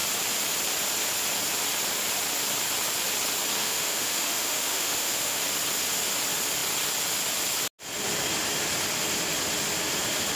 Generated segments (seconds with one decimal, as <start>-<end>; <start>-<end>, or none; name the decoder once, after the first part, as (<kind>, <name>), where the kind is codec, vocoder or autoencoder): 3.6-5.4 (autoencoder, DAC-VAE)